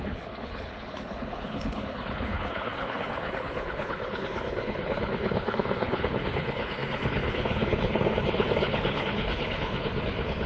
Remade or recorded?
remade